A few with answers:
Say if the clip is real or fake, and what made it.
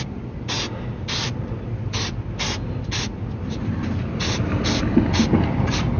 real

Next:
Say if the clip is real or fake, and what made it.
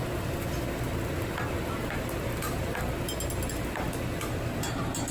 real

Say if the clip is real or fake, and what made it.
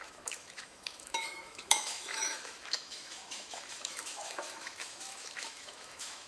fake, autoencoder, DAC-VAE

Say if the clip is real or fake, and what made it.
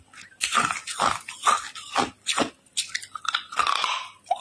real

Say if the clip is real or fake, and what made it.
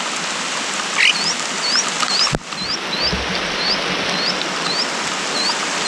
real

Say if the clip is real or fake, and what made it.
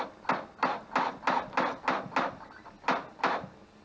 real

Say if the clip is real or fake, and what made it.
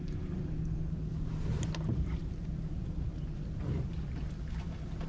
real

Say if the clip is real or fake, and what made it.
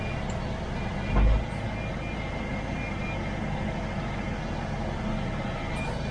real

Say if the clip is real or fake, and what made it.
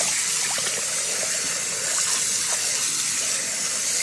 real